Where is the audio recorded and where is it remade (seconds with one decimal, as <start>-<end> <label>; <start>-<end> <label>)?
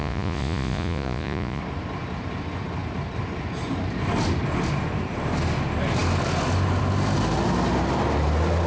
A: 0.0-1.6 remade; 1.6-8.7 recorded